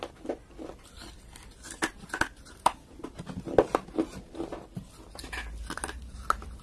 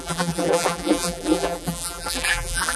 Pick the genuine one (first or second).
first